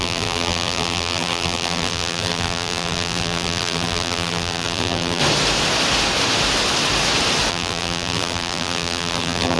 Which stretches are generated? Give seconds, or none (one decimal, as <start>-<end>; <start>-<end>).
0.0-5.2; 7.5-9.6